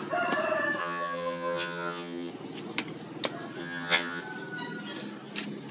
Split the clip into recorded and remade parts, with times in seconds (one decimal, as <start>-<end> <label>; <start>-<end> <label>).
0.0-0.8 recorded; 0.8-2.3 remade; 2.3-3.6 recorded; 3.6-4.2 remade; 4.2-5.7 recorded